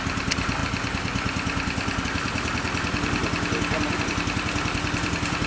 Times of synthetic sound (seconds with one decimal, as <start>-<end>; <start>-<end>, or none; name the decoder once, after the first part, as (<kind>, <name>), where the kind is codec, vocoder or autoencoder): 0.0-3.2 (vocoder, BigVGAN v2); 4.0-5.5